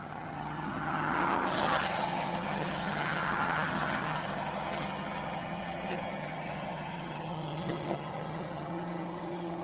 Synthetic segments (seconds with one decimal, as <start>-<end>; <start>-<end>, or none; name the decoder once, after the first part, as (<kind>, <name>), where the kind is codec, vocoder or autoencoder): 0.0-9.6 (vocoder, HiFi-GAN)